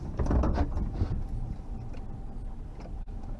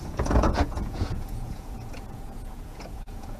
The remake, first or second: second